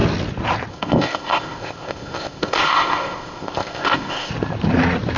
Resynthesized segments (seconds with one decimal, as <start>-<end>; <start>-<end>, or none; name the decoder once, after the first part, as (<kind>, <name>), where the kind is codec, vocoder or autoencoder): 0.7-4.3 (codec, ZipCodec)